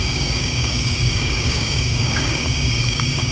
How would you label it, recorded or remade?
remade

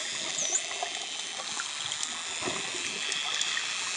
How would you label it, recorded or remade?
recorded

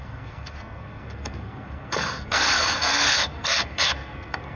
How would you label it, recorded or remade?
remade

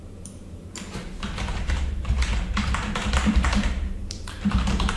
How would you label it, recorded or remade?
remade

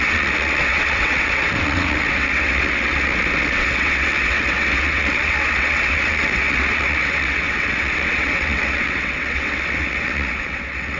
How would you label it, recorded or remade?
remade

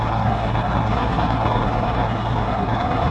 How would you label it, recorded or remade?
remade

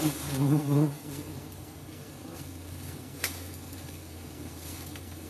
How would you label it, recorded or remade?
remade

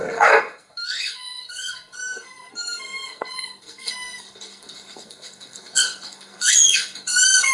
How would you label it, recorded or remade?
remade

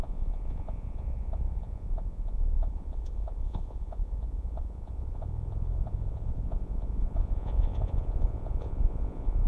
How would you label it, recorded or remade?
remade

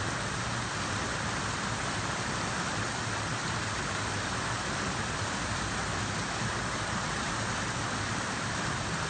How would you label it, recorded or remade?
recorded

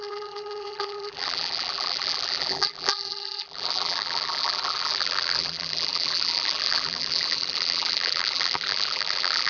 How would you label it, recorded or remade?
remade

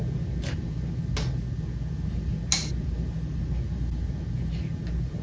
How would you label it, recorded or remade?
recorded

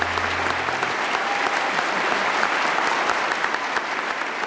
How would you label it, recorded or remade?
recorded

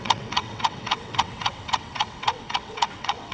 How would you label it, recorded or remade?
remade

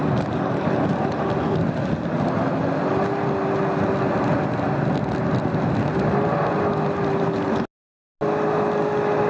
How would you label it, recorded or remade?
recorded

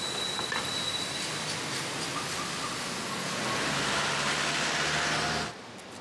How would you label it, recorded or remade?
recorded